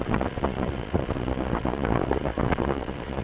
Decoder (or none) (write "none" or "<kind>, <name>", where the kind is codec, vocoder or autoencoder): vocoder, Vocos